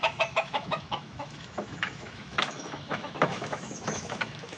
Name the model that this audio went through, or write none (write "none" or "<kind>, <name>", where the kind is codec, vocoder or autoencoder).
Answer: autoencoder, DAC-VAE